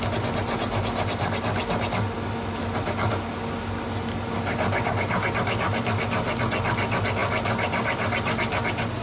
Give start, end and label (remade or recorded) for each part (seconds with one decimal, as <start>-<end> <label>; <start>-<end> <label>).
0.0-9.0 recorded